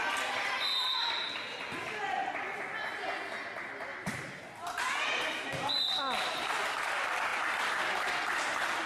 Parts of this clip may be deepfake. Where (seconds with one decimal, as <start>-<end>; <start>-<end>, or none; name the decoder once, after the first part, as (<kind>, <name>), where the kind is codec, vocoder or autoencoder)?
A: 3.9-5.8 (vocoder, BigVGAN v2)